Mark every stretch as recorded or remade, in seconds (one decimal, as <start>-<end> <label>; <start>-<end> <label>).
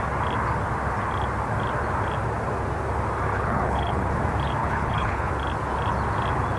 0.0-3.3 recorded; 3.3-4.1 remade; 4.1-4.6 recorded; 4.6-5.3 remade; 5.3-6.6 recorded